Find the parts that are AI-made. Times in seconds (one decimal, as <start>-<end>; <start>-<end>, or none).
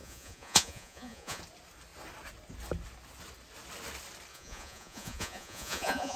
0.0-1.4; 4.3-6.2